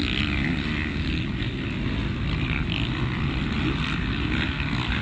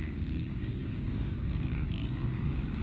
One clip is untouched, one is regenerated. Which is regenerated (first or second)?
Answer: second